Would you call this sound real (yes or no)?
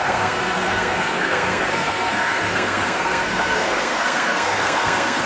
no